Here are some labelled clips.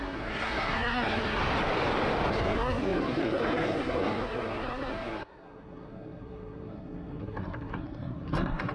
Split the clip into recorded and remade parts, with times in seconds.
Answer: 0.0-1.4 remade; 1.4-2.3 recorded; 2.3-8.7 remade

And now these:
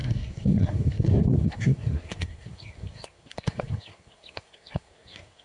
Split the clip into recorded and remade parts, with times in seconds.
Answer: 0.0-5.4 remade